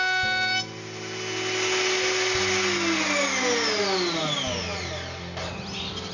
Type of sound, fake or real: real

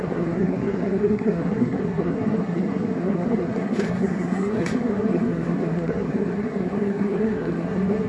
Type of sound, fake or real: fake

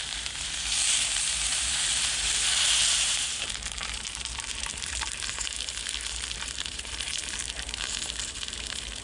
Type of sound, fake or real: fake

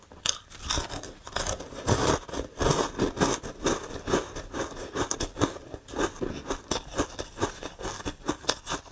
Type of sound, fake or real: real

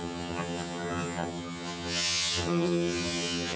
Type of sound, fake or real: fake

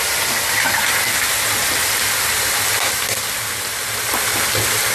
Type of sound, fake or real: real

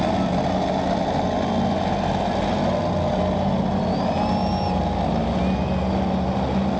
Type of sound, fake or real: real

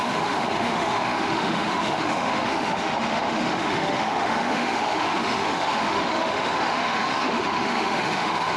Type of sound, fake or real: fake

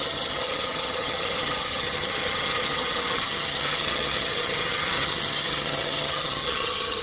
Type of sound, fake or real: fake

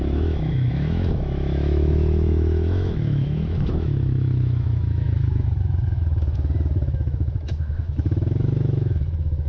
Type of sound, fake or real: fake